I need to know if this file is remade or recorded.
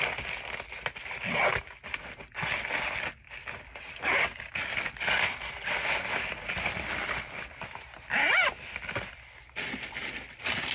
recorded